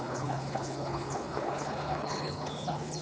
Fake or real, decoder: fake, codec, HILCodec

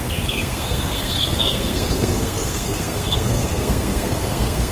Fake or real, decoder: fake, codec, SNAC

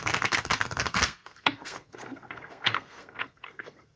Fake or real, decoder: fake, codec, SNAC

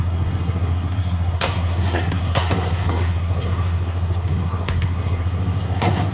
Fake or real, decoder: fake, codec, SNAC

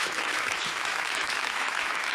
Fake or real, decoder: fake, autoencoder, DAC-VAE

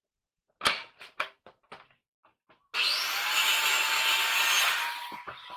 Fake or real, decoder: real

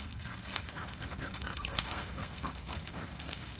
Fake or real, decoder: fake, codec, SNAC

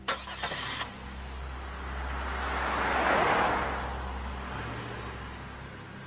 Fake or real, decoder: real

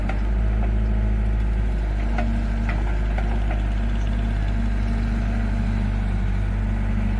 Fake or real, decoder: real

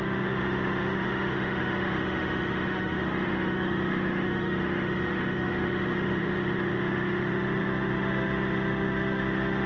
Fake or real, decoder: fake, autoencoder, DAC-VAE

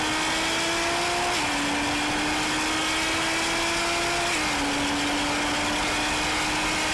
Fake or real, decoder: real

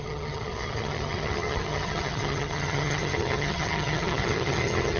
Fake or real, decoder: fake, vocoder, HiFi-GAN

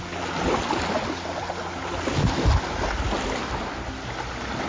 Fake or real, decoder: real